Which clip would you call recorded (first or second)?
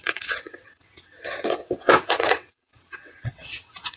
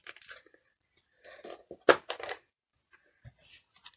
second